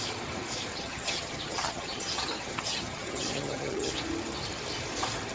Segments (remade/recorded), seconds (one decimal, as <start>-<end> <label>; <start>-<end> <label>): 0.0-0.7 recorded; 0.7-3.9 remade; 3.9-5.3 recorded